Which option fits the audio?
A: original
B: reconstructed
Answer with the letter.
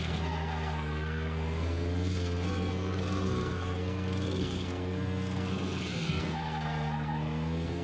B